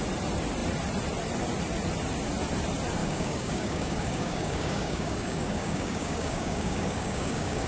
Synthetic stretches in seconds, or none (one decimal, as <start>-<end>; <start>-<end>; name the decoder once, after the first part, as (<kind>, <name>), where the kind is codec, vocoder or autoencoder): 3.0-7.7 (codec, DAC)